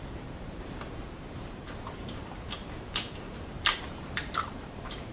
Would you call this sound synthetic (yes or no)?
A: yes